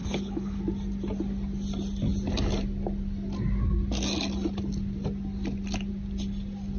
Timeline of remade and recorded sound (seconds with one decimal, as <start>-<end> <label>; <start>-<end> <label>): 0.0-0.6 remade; 0.6-6.8 recorded